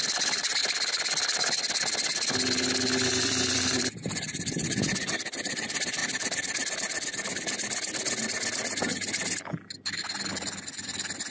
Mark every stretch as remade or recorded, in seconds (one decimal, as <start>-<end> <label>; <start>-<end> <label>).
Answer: 0.0-0.6 remade; 0.6-3.1 recorded; 3.1-6.0 remade; 6.0-10.3 recorded; 10.3-11.3 remade